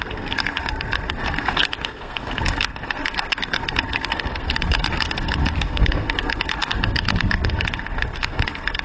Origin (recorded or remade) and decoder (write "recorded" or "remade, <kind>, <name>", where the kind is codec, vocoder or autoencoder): remade, codec, SNAC